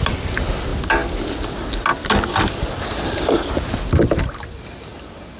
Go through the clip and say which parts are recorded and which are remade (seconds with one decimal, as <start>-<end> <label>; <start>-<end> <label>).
0.0-5.4 recorded